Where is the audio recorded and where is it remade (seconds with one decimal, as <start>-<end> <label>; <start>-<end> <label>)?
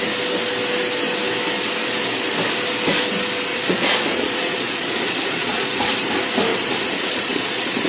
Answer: 0.0-3.5 recorded; 3.5-5.9 remade; 5.9-6.5 recorded; 6.5-7.9 remade